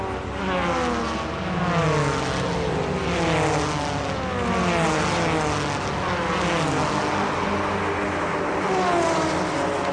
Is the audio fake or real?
real